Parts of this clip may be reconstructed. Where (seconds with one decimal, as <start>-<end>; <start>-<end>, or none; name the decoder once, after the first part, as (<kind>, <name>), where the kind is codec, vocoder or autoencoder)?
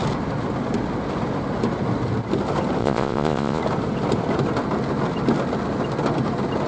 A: 2.8-3.6 (vocoder, Vocos)